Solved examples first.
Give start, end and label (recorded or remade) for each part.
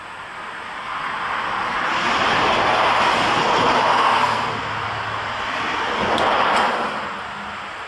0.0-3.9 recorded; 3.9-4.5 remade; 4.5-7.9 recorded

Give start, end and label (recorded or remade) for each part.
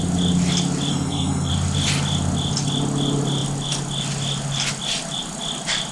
0.0-0.9 recorded; 0.9-1.5 remade; 1.5-5.9 recorded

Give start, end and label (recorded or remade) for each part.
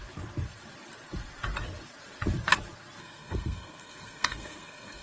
0.0-3.0 recorded; 3.0-5.0 remade